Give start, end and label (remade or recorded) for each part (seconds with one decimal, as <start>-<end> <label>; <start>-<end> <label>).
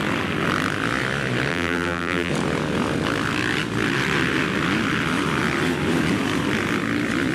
0.0-1.5 recorded; 1.5-2.3 remade; 2.3-7.3 recorded